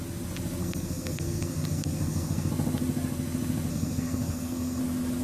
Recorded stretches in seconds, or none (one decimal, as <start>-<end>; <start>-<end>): 0.0-0.6; 2.5-3.7; 4.8-5.2